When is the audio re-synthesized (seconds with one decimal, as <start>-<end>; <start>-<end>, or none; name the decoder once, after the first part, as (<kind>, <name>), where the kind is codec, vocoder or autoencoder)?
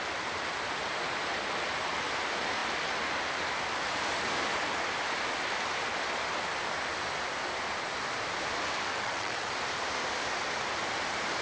8.9-9.5 (vocoder, WaveNeXt)